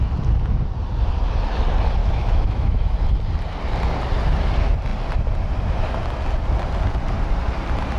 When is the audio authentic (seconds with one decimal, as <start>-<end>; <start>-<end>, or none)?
0.0-2.0; 2.9-8.0

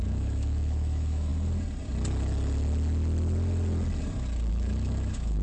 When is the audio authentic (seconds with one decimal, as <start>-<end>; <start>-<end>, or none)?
1.3-4.5

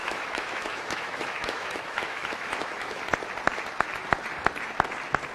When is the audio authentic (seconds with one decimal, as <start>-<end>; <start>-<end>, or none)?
3.0-5.3

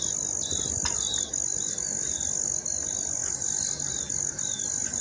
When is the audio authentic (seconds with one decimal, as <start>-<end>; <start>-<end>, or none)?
0.0-5.0

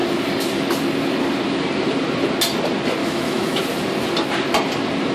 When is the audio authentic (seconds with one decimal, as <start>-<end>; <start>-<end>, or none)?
0.0-3.0; 3.6-5.1

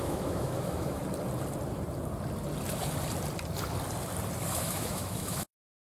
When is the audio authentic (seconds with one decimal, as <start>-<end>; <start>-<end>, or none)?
1.0-4.5